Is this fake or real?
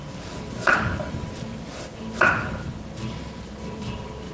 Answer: fake